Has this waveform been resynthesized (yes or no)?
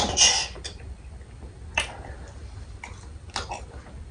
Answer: no